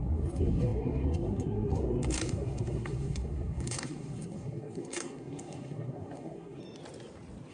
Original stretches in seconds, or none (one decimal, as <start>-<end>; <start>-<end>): 6.6-7.5